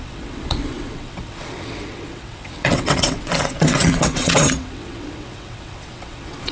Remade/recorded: remade